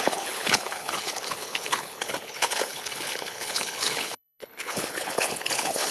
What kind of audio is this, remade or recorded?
remade